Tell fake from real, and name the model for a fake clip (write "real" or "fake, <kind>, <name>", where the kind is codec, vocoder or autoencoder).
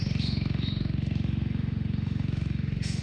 fake, autoencoder, DAC-VAE